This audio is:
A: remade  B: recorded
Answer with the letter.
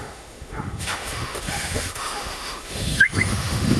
A